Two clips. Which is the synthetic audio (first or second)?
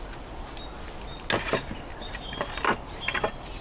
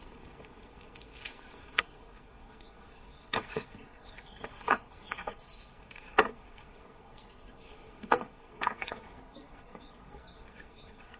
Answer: second